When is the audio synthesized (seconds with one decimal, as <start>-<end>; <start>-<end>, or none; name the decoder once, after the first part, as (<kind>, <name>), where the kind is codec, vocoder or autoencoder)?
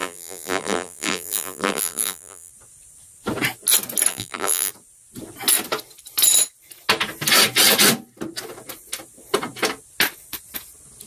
0.0-2.5 (vocoder, BigVGAN v2); 4.1-4.7